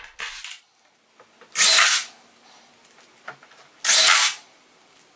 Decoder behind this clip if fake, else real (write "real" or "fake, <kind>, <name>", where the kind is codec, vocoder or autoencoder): real